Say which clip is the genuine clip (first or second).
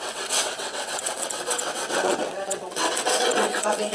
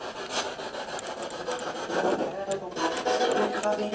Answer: second